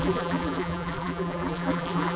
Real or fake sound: fake